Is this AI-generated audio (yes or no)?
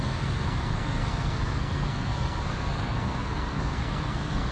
yes